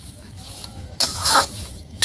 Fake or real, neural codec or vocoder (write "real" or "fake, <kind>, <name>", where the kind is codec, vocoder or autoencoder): fake, autoencoder, DAC-VAE